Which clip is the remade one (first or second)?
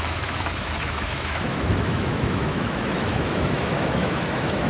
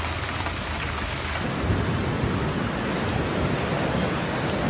first